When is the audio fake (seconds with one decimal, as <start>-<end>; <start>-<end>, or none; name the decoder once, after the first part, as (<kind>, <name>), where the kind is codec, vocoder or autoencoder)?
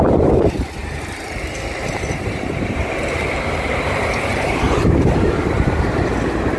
0.8-3.9 (vocoder, BigVGAN v2); 4.3-5.8